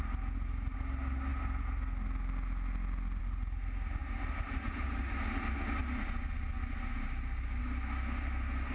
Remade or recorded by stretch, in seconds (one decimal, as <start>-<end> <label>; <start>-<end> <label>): 0.0-8.7 recorded

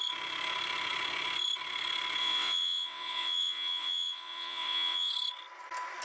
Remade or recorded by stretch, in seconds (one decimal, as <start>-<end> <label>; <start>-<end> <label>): 0.0-2.2 recorded; 2.2-5.1 remade; 5.1-6.0 recorded

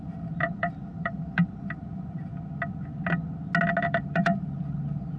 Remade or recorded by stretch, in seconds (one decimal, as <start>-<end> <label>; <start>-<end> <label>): 0.0-2.3 remade; 2.3-3.8 recorded; 3.8-5.2 remade

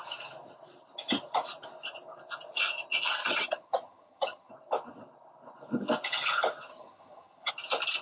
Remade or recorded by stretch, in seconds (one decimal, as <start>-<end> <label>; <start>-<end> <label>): 0.0-3.2 recorded; 3.2-4.5 remade; 4.5-6.7 recorded; 6.7-7.5 remade; 7.5-8.0 recorded

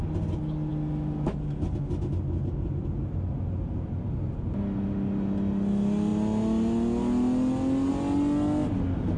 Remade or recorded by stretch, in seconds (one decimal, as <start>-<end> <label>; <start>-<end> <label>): 0.0-9.2 recorded

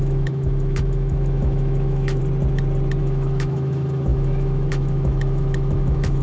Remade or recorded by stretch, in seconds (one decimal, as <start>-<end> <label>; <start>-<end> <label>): 0.0-2.2 remade; 2.2-3.0 recorded; 3.0-6.2 remade

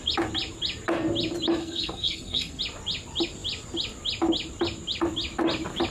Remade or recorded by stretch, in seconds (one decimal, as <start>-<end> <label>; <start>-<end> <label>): 0.0-1.6 recorded; 1.6-2.6 remade; 2.6-5.9 recorded